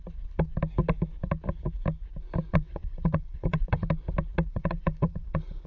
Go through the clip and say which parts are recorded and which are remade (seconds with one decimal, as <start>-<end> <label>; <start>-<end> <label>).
0.0-2.5 recorded; 2.5-3.9 remade; 3.9-4.5 recorded; 4.5-5.7 remade